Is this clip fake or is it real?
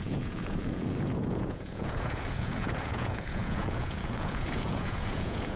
fake